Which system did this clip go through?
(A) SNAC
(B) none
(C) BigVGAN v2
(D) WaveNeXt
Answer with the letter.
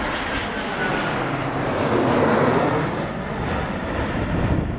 B